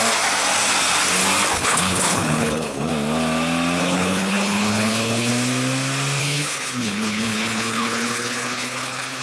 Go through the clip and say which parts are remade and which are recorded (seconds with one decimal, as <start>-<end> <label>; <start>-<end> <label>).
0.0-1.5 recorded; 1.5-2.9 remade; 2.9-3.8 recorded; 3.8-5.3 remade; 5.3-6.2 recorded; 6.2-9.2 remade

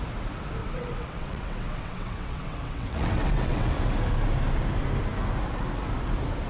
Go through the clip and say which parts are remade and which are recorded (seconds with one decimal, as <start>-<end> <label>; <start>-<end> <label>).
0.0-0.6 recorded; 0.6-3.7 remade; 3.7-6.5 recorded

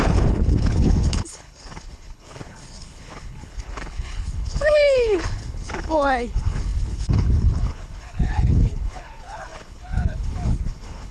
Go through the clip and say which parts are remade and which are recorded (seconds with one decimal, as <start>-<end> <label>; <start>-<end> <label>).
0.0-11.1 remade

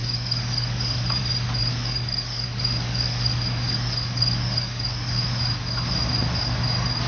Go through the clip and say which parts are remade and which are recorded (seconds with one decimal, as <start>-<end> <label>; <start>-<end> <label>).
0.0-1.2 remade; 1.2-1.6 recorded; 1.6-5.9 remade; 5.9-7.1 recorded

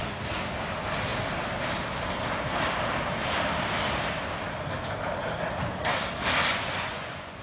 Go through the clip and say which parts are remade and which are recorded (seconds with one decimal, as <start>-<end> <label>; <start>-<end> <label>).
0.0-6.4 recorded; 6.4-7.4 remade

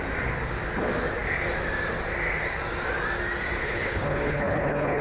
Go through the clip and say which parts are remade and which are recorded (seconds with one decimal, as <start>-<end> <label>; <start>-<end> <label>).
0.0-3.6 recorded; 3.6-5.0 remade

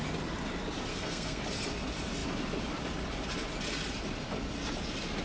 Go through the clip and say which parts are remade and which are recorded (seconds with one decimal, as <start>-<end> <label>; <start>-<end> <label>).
0.0-0.9 recorded; 0.9-1.4 remade; 1.4-5.2 recorded